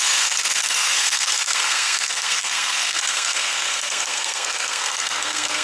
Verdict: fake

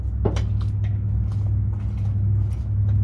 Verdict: real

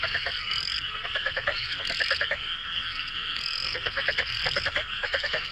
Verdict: fake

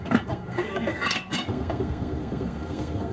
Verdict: fake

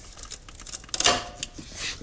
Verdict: real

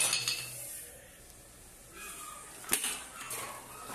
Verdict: real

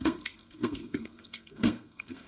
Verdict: fake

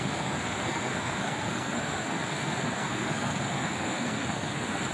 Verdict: fake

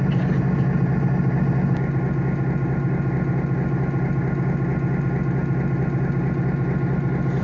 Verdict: real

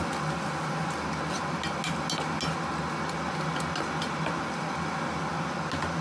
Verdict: real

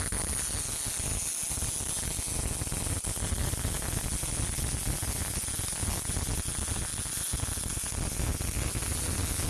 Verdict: real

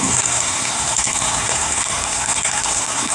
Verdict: fake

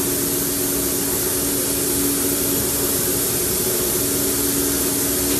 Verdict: real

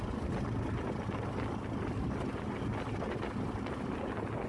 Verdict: real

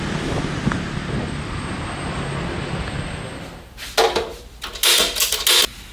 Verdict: real